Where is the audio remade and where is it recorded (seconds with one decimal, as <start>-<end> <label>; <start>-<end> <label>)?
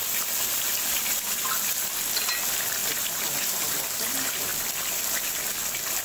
0.0-2.8 recorded; 2.8-4.1 remade; 4.1-4.5 recorded; 4.5-5.0 remade; 5.0-6.0 recorded